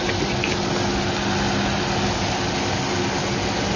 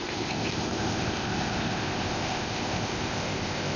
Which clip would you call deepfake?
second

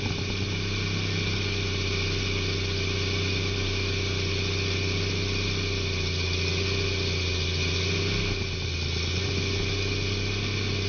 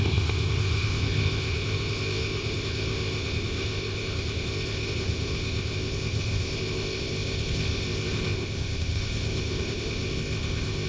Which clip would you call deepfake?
second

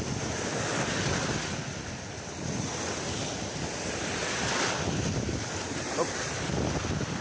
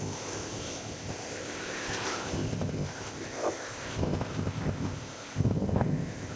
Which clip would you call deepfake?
second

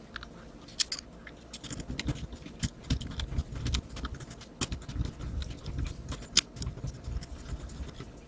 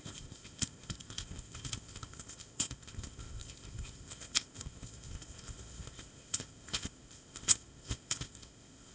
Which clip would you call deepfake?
second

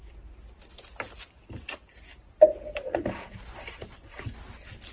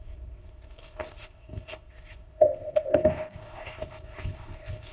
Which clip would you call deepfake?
second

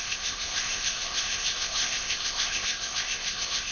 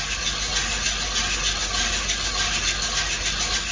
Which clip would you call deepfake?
first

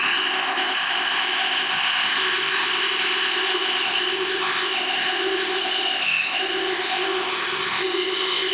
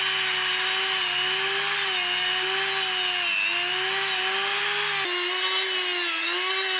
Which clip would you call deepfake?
first